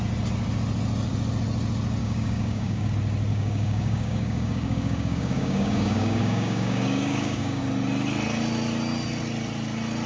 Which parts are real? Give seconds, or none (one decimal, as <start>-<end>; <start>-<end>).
0.0-2.0; 2.9-3.3; 7.6-10.1